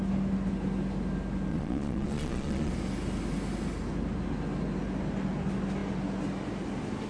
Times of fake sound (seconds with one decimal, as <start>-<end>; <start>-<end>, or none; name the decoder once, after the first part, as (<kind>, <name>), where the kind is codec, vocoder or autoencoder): 1.5-2.7 (vocoder, Vocos)